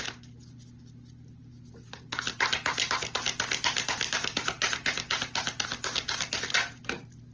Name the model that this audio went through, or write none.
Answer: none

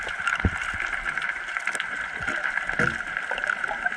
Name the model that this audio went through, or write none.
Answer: none